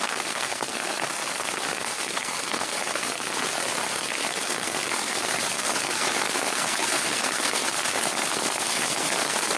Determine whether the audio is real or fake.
fake